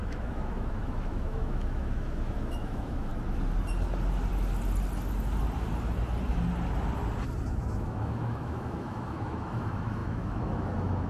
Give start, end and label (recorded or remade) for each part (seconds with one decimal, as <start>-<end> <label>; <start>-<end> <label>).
0.0-3.1 remade; 3.1-7.5 recorded; 7.5-11.1 remade